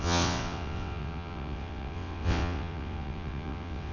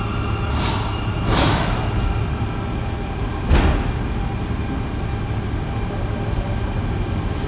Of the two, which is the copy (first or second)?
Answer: first